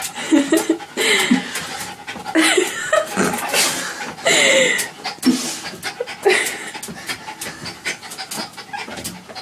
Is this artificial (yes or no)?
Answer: no